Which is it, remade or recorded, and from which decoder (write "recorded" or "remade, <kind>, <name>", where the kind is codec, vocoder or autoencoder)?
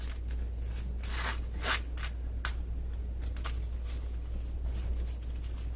recorded